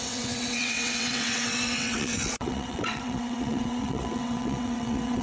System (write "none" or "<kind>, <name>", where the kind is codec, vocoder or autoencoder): vocoder, WaveNeXt